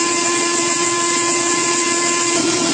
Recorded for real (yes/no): no